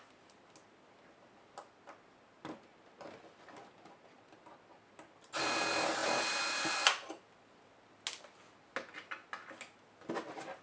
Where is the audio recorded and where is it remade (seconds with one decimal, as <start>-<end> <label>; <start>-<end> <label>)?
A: 0.0-10.6 recorded